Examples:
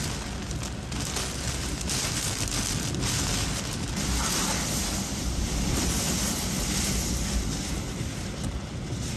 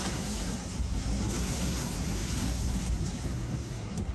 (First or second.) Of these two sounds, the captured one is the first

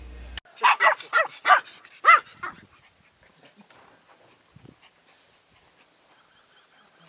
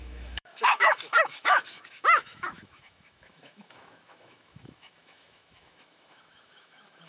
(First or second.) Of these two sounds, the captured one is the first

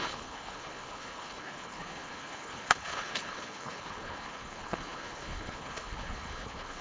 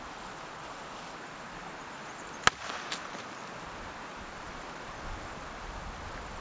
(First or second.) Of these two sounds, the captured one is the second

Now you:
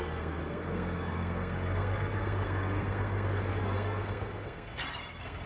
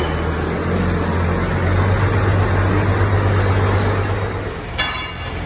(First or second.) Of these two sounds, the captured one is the second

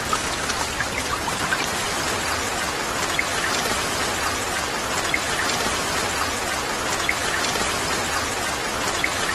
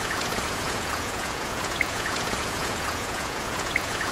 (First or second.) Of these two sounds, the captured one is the first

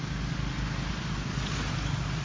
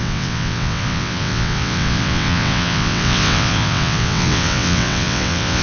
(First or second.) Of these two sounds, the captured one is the first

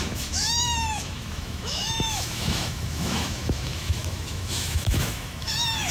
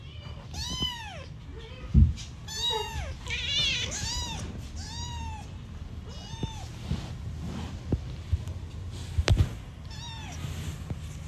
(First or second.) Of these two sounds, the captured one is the second